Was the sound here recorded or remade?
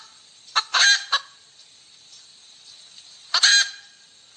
recorded